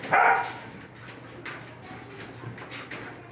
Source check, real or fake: real